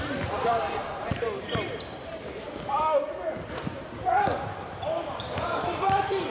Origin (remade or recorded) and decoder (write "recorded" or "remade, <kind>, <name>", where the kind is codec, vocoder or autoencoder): remade, vocoder, BigVGAN v2